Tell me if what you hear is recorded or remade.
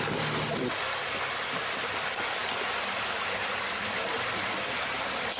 recorded